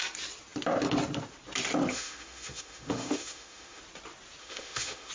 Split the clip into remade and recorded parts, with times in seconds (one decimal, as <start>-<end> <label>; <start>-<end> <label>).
0.0-1.9 recorded; 1.9-3.8 remade; 3.8-4.4 recorded; 4.4-5.1 remade